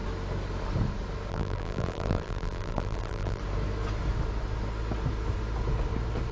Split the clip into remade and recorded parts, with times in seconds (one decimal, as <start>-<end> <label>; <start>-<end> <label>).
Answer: 0.0-1.3 recorded; 1.3-3.4 remade; 3.4-6.3 recorded